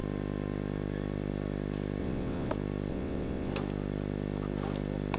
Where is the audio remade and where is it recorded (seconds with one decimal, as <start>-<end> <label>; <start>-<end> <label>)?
0.0-2.0 recorded; 2.0-2.5 remade; 2.5-2.9 recorded; 2.9-3.5 remade; 3.5-5.2 recorded